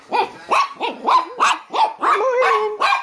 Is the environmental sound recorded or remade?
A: recorded